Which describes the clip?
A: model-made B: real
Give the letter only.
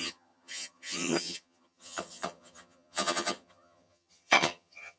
A